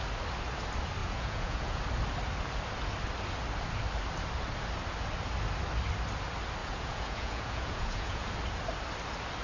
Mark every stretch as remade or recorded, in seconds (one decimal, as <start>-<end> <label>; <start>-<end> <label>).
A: 0.0-1.0 recorded; 1.0-1.8 remade; 1.8-6.6 recorded; 6.6-8.3 remade; 8.3-9.4 recorded